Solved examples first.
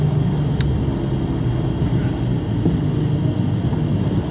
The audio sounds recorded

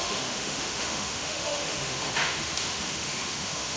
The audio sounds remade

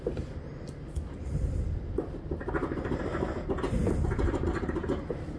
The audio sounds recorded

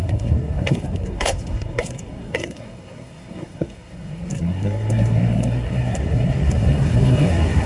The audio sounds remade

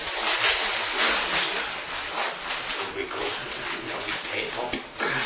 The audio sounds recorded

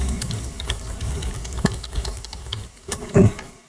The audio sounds remade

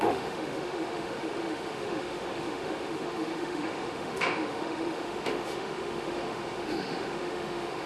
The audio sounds remade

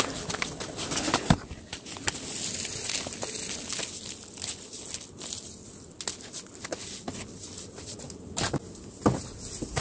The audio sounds recorded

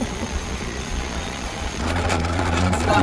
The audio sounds remade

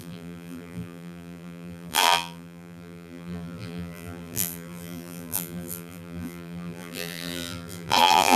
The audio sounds remade